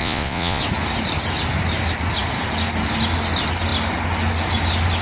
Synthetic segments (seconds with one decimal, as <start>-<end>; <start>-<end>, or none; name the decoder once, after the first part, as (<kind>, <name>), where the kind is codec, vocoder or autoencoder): 0.0-0.6 (vocoder, Vocos)